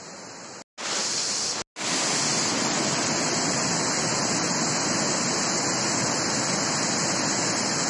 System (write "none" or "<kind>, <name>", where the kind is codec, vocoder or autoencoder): none